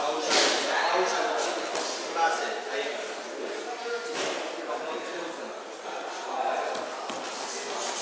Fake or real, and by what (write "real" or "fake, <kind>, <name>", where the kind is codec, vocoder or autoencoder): real